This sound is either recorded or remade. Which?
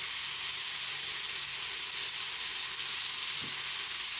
recorded